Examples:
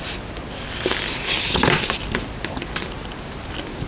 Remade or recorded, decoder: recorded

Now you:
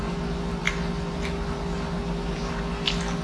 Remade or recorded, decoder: recorded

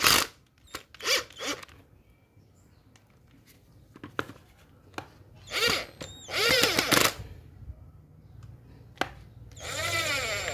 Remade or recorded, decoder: recorded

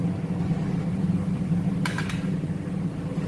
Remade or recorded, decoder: recorded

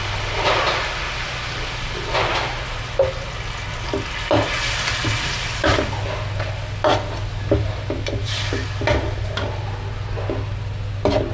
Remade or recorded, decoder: recorded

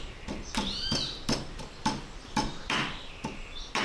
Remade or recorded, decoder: remade, vocoder, BigVGAN v2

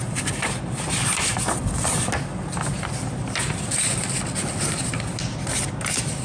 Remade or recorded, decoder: recorded